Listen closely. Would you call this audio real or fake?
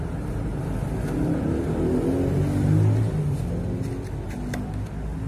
real